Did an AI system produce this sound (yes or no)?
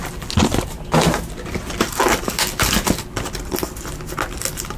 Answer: no